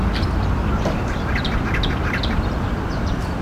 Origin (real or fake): real